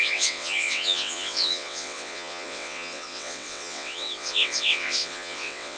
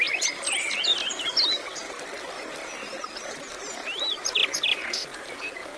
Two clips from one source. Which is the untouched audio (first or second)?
second